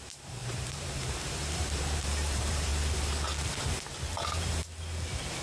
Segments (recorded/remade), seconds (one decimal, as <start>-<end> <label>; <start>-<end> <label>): 0.0-2.7 remade; 2.7-4.2 recorded; 4.2-4.7 remade; 4.7-5.4 recorded